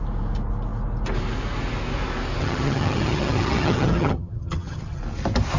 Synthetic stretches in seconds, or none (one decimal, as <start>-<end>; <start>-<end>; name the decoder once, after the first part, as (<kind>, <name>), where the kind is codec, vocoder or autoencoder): 2.4-5.0 (vocoder, HiFi-GAN)